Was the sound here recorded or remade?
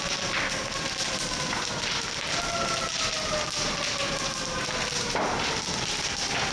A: recorded